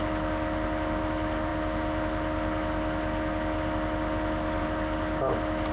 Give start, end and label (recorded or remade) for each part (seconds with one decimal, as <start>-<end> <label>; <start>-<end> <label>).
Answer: 0.0-5.7 recorded